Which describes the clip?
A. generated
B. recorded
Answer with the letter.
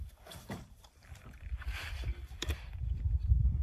A